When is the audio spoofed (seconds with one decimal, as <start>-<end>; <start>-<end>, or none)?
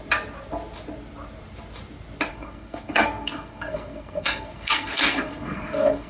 2.3-6.1